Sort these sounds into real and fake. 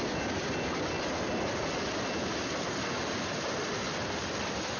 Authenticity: real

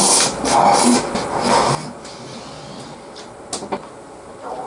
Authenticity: real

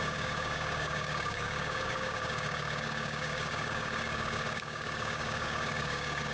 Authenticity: fake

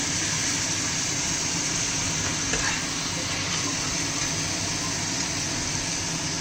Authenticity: real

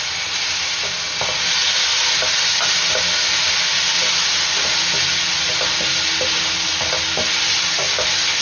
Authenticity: real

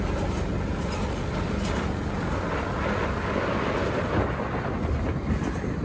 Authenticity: real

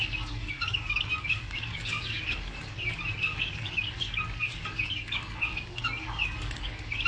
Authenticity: fake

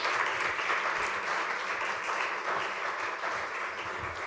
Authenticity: real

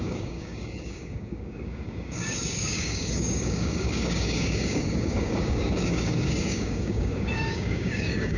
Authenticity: fake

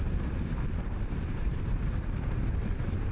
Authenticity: real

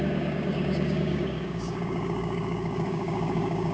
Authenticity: fake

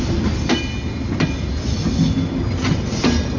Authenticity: real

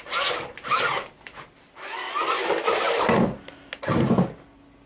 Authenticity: real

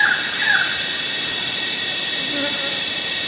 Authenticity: real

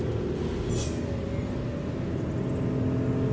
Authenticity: real